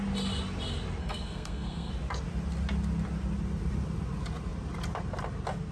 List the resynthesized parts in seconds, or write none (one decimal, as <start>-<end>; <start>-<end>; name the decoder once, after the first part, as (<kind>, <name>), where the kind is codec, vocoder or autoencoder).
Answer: 1.0-1.9 (codec, SNAC)